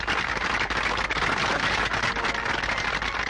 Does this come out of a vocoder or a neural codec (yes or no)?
no